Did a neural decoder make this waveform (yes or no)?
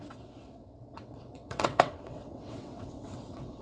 yes